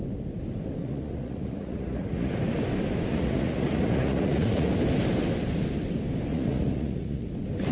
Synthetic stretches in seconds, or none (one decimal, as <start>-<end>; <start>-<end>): 0.8-2.3; 3.1-4.7; 6.3-7.3